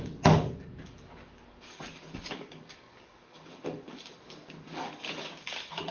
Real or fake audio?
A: fake